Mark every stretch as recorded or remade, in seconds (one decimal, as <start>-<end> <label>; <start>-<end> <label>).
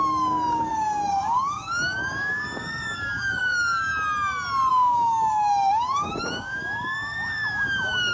0.0-3.9 remade; 3.9-4.7 recorded; 4.7-8.1 remade